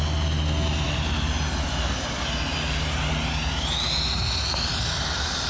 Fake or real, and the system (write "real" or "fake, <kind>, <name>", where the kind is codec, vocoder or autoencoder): real